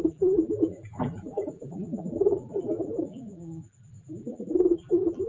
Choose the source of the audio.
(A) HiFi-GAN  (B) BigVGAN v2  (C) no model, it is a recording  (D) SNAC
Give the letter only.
B